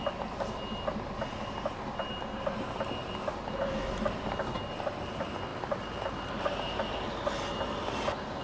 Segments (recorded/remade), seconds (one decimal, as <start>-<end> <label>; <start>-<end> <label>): 0.0-8.4 recorded